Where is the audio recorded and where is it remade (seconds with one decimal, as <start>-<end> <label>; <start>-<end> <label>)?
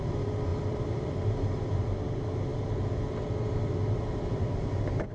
0.0-0.5 recorded; 0.5-2.0 remade; 2.0-5.1 recorded